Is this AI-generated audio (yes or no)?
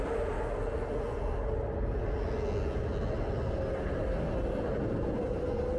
no